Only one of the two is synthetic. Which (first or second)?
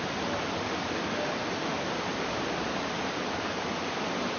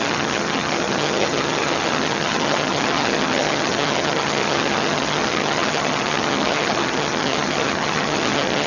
second